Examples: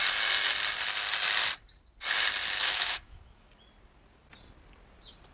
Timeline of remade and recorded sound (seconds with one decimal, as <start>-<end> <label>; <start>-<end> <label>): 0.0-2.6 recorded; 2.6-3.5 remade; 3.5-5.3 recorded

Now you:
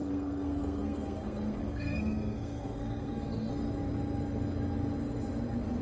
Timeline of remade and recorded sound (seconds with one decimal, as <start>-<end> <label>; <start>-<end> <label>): 0.0-3.5 remade; 3.5-5.8 recorded

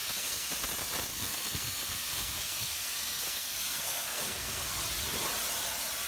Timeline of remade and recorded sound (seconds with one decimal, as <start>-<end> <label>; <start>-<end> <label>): 0.0-0.5 remade; 0.5-1.1 recorded; 1.1-4.8 remade; 4.8-6.1 recorded